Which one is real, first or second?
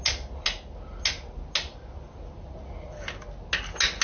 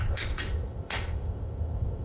first